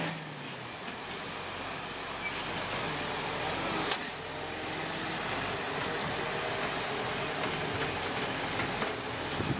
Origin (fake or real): real